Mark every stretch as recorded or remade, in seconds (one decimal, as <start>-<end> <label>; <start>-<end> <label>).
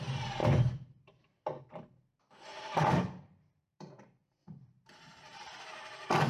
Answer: 0.0-2.5 recorded; 2.5-3.9 remade; 3.9-6.3 recorded